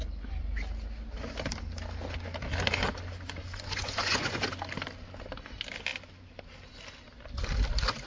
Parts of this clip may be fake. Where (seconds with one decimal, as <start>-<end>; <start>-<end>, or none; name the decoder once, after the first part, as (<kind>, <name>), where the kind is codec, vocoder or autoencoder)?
3.4-4.4 (vocoder, Vocos)